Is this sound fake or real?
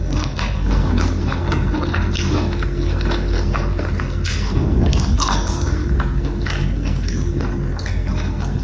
fake